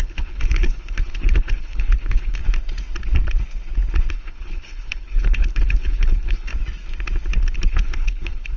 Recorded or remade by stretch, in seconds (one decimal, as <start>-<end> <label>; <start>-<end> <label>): 0.0-2.4 remade; 2.4-4.1 recorded; 4.1-6.5 remade; 6.5-7.6 recorded; 7.6-8.6 remade